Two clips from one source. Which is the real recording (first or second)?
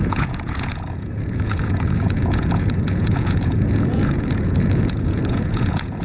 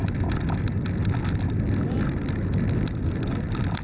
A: second